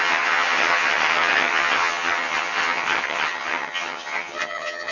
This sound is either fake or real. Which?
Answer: fake